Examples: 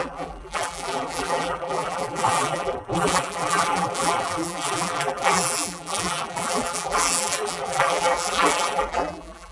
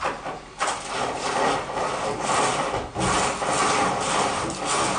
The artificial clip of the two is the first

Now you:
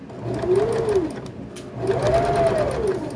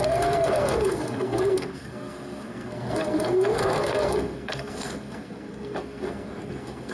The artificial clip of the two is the second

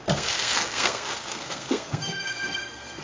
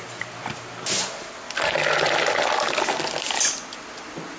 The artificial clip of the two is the first